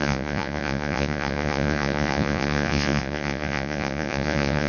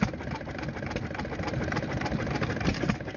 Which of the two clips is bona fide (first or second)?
second